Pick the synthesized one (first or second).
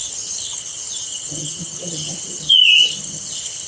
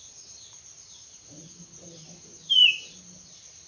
first